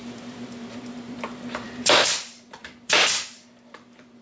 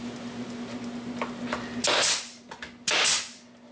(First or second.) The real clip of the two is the second